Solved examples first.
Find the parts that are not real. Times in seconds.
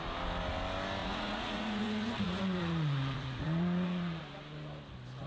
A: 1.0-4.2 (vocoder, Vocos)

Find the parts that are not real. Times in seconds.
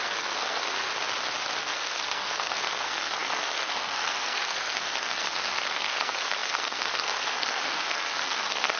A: 0.0-0.9 (codec, SNAC); 1.6-8.8